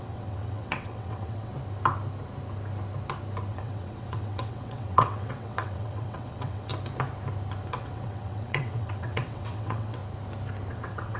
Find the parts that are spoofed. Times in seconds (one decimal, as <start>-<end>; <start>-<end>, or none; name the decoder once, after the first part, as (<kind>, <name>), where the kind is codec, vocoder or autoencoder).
0.0-1.5 (vocoder, WaveNeXt); 3.5-6.7; 7.7-10.0; 10.7-11.2